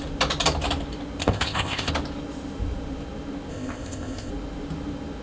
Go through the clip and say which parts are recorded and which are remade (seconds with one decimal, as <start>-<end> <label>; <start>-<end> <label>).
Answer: 0.0-1.2 recorded; 1.2-1.9 remade; 1.9-3.5 recorded; 3.5-4.3 remade; 4.3-5.2 recorded